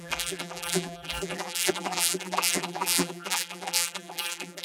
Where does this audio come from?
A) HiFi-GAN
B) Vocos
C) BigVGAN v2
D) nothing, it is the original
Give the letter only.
C